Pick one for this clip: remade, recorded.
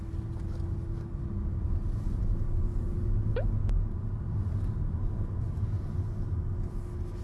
recorded